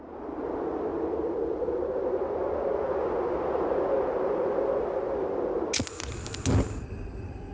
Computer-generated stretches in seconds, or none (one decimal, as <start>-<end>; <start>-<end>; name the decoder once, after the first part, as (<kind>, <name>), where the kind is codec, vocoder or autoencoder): none